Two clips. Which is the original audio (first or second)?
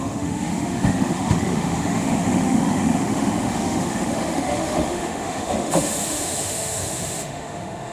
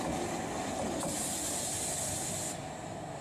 second